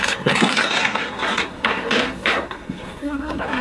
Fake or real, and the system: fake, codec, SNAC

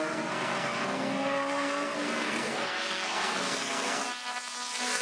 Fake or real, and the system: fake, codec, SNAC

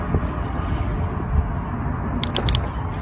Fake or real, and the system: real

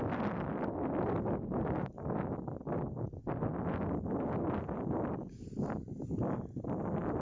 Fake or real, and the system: real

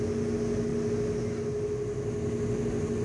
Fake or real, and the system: real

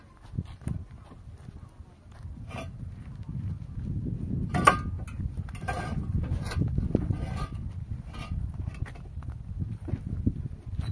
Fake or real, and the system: real